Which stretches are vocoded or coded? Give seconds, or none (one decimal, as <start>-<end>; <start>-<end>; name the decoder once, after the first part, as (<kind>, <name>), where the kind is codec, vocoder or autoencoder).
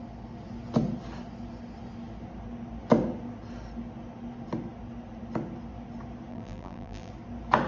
6.3-7.1 (vocoder, BigVGAN v2)